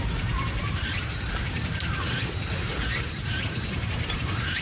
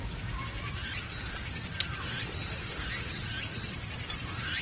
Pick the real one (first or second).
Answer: second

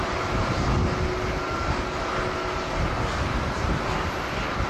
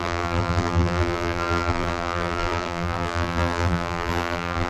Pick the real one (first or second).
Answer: first